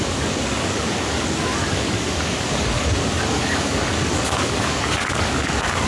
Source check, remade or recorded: remade